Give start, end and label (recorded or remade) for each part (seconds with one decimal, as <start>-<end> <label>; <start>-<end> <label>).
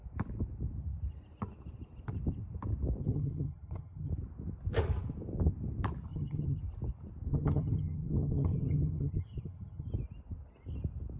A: 0.0-3.0 recorded; 3.0-4.1 remade; 4.1-6.1 recorded; 6.1-6.6 remade; 6.6-7.3 recorded; 7.3-9.9 remade; 9.9-11.2 recorded